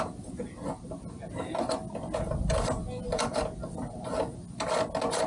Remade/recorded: recorded